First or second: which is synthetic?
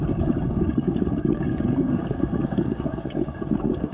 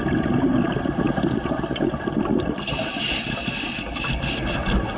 first